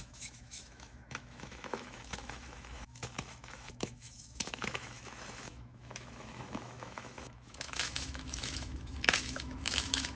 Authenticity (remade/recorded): remade